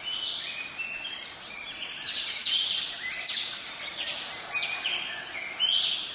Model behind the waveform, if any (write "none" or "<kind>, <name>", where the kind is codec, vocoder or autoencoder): none